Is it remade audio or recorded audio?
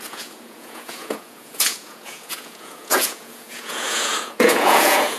remade